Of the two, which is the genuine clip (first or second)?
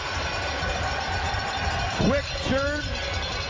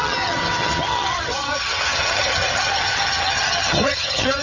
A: first